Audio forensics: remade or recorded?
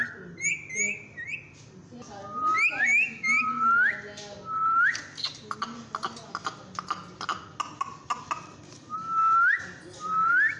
recorded